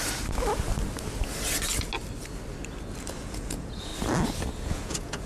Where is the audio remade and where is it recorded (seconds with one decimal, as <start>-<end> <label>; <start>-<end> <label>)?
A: 0.0-3.2 recorded; 3.2-3.9 remade; 3.9-4.6 recorded; 4.6-5.3 remade

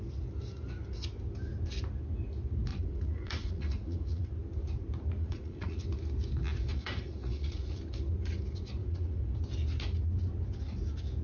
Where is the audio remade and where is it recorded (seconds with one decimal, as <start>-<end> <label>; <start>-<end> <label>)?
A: 0.0-2.7 recorded; 2.7-4.3 remade; 4.3-5.2 recorded; 5.2-5.8 remade; 5.8-6.7 recorded; 6.7-7.8 remade; 7.8-8.8 recorded; 8.8-9.4 remade; 9.4-11.2 recorded

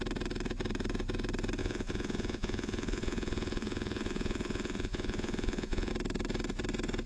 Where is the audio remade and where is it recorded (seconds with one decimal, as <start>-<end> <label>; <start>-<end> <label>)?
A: 0.0-1.6 recorded; 1.6-5.9 remade; 5.9-7.1 recorded

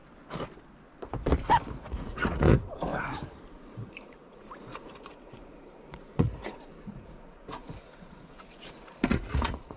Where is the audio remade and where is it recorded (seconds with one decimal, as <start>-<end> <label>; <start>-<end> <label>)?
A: 0.0-1.8 recorded; 1.8-2.9 remade; 2.9-3.5 recorded; 3.5-9.8 remade